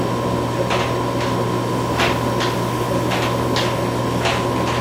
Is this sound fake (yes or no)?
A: no